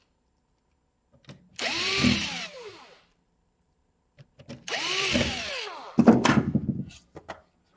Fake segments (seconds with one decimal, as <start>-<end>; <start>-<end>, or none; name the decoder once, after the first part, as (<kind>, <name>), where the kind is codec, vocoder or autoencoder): 1.5-5.6 (vocoder, BigVGAN v2)